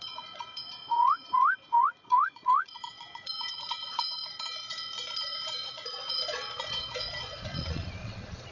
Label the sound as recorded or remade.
remade